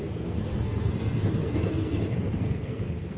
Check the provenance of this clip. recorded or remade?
remade